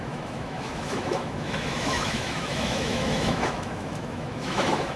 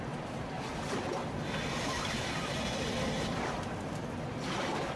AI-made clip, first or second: first